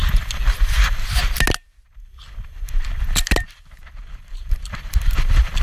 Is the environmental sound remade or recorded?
recorded